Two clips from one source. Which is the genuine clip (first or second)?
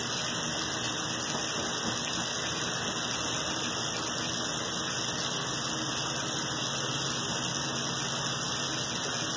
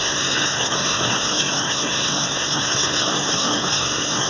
first